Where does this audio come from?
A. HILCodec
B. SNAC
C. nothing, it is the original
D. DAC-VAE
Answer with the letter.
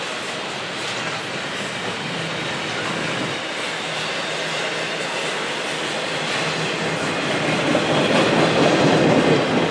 C